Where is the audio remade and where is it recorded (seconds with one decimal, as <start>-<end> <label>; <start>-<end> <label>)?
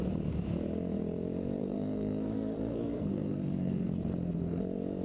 0.0-1.6 recorded; 1.6-4.6 remade; 4.6-5.0 recorded